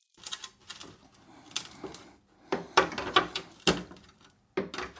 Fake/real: real